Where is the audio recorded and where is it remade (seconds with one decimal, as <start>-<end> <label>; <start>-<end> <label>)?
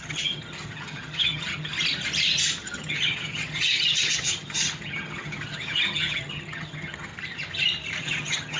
0.0-1.7 remade; 1.7-2.6 recorded; 2.6-7.1 remade; 7.1-8.0 recorded; 8.0-8.6 remade